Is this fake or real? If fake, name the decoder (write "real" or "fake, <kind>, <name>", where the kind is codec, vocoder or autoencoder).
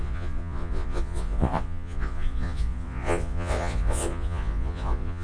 fake, vocoder, Vocos